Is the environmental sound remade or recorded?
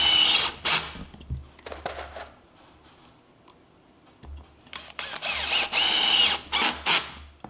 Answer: recorded